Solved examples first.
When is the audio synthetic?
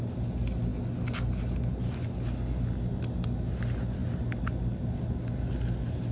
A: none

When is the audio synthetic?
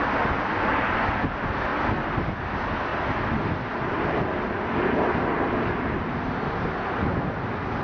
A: none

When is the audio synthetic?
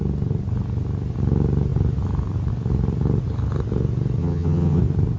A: 4.2-4.8 (vocoder, HiFi-GAN)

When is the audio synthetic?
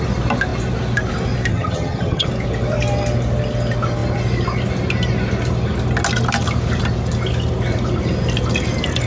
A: 1.5-2.3 (vocoder, HiFi-GAN)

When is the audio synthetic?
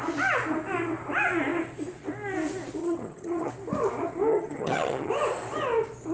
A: 2.8-3.5 (vocoder, HiFi-GAN); 4.3-5.1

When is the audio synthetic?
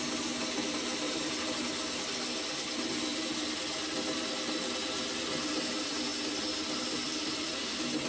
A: none